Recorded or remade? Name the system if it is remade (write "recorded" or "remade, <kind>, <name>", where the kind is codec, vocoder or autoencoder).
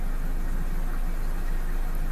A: recorded